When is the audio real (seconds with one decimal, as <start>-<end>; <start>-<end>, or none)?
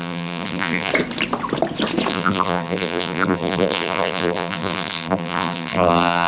0.9-2.1